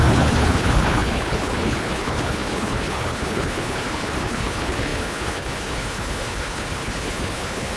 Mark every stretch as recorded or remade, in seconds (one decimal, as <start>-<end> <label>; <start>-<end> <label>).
0.0-7.8 remade